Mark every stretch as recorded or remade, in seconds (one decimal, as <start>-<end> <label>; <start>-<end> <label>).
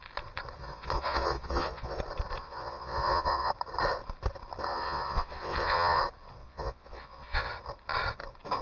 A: 0.0-0.6 recorded; 0.6-2.0 remade; 2.0-2.4 recorded; 2.4-3.5 remade; 3.5-4.7 recorded; 4.7-6.0 remade; 6.0-6.4 recorded; 6.4-7.5 remade; 7.5-8.6 recorded